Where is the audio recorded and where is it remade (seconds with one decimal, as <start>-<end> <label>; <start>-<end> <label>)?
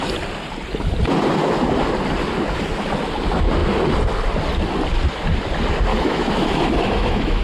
0.0-5.9 recorded; 5.9-7.4 remade